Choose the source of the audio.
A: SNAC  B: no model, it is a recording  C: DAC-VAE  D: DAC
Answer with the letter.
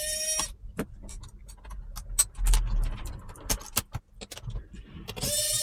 B